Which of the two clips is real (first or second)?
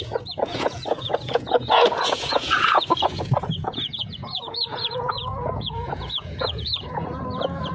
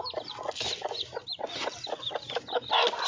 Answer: second